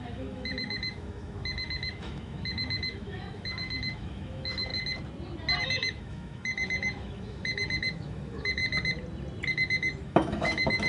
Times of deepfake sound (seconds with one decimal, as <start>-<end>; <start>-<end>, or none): 0.0-4.7; 5.6-8.6; 9.5-10.9